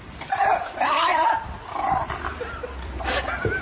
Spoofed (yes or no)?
yes